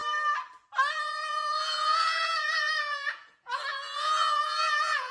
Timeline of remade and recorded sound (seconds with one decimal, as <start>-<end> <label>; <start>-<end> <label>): 0.0-0.9 recorded; 0.9-5.1 remade